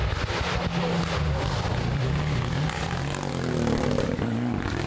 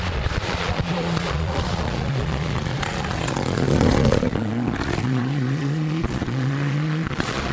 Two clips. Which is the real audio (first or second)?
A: first